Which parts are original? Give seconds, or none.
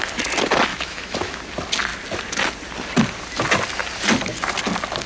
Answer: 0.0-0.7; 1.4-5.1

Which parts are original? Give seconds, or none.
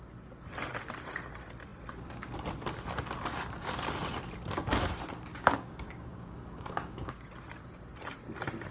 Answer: 0.0-5.3; 7.3-8.7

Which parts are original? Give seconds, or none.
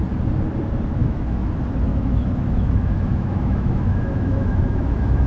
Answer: 0.0-1.0; 1.5-1.9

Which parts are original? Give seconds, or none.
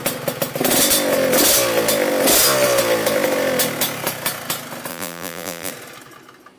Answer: 0.0-4.9; 5.7-6.6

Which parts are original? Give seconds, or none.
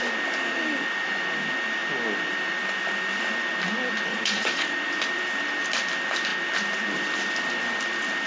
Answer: 0.0-4.1; 4.9-8.3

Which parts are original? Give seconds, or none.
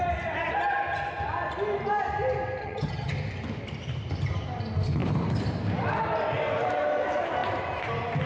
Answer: 0.0-2.6; 3.1-8.3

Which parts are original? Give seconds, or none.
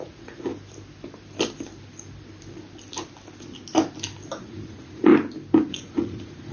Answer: 0.5-4.4; 5.1-5.7